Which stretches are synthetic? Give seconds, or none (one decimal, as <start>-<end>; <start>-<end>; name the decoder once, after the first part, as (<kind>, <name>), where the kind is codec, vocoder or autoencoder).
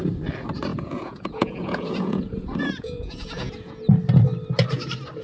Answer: 0.7-3.8 (vocoder, Vocos)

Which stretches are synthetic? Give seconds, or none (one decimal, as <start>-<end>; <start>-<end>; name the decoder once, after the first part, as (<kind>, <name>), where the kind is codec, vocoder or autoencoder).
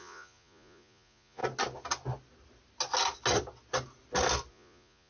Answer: 0.0-1.4 (vocoder, Vocos); 4.5-5.1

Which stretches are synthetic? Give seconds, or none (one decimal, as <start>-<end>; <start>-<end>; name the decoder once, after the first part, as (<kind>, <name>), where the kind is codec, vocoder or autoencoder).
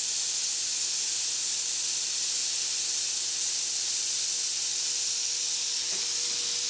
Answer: none